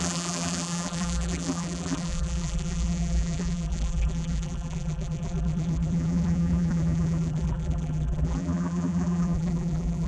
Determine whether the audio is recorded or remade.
remade